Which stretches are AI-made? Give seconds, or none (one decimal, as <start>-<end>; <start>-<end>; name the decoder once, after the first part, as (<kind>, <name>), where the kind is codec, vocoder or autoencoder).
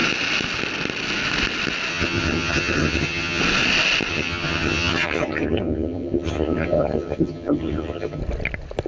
1.9-3.4 (vocoder, HiFi-GAN); 4.1-8.2